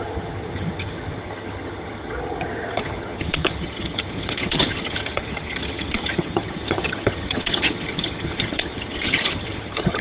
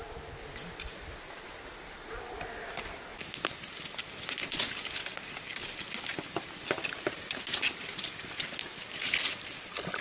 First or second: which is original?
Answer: second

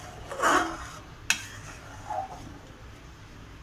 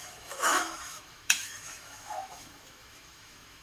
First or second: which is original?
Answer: first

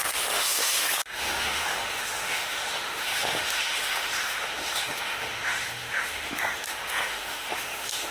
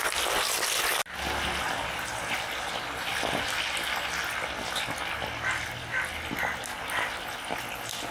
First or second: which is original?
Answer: second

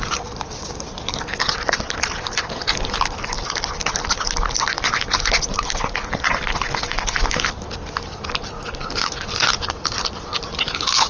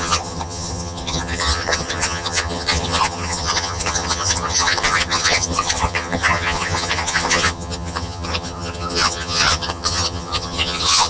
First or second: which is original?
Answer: first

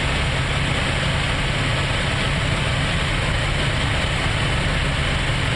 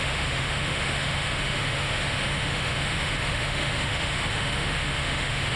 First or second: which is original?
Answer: first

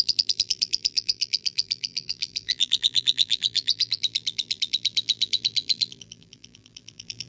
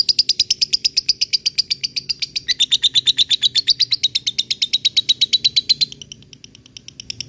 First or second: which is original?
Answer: second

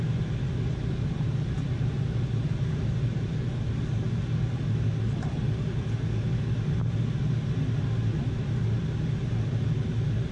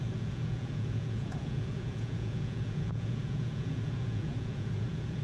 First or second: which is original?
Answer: first